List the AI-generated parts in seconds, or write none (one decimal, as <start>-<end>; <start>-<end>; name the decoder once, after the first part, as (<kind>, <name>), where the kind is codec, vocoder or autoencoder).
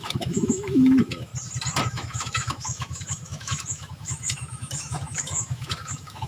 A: 0.0-1.3 (autoencoder, DAC-VAE); 1.9-6.3